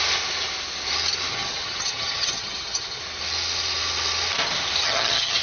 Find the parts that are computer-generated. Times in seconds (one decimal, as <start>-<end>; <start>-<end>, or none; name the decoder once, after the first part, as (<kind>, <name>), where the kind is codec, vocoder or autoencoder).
1.3-3.0 (vocoder, HiFi-GAN); 4.8-5.4